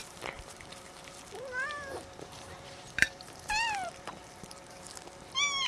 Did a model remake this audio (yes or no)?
yes